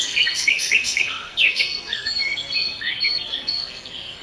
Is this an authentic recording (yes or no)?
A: no